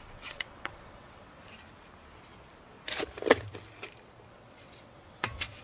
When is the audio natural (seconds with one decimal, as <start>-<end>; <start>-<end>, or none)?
1.4-4.3